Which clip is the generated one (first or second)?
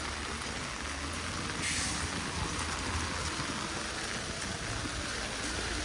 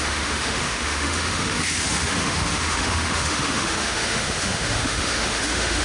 second